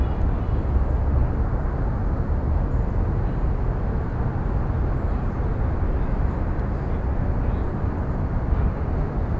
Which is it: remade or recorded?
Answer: recorded